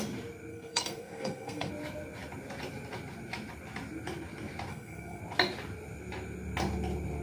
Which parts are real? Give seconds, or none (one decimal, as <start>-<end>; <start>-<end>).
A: 0.0-0.5; 1.7-4.7; 5.2-7.2